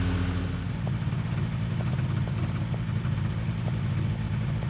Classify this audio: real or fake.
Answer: real